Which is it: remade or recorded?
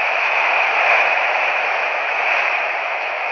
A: remade